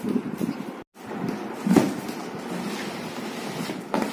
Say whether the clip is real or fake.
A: real